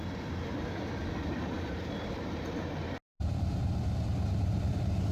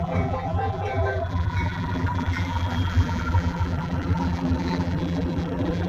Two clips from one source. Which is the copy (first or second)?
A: second